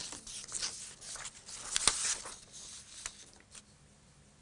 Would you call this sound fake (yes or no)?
no